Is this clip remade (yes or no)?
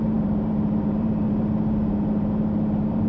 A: yes